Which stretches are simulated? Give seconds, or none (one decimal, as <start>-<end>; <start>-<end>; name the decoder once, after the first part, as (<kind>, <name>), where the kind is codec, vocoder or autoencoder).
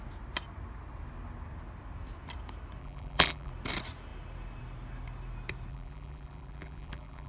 2.8-3.5 (vocoder, BigVGAN v2); 5.7-7.3